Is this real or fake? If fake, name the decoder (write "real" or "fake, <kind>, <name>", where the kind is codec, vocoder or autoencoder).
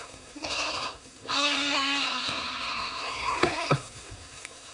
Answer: fake, codec, SNAC